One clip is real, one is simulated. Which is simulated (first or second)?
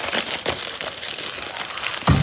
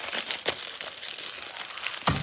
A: first